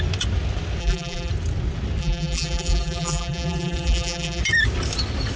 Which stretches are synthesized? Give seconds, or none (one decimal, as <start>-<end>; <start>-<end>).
0.8-1.3; 2.0-4.4